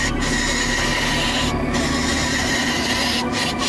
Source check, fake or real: real